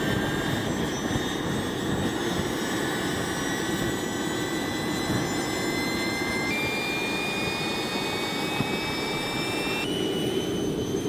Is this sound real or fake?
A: real